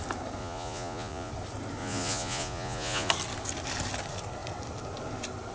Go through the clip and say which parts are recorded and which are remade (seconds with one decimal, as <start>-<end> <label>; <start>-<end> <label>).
0.0-0.4 recorded; 0.4-1.3 remade; 1.3-1.8 recorded; 1.8-3.1 remade; 3.1-5.5 recorded